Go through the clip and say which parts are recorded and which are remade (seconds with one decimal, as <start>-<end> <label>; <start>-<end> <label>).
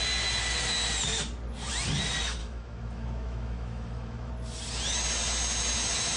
0.0-2.4 recorded; 2.4-4.3 remade; 4.3-6.2 recorded